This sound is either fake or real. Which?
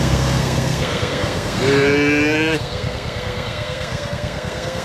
fake